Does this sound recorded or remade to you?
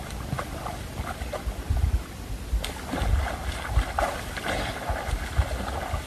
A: recorded